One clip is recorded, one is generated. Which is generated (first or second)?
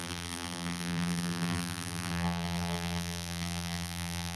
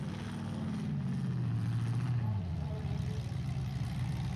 first